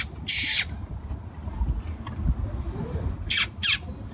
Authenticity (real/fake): real